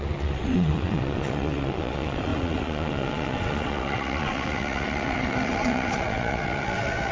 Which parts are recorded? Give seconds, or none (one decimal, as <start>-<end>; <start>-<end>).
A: none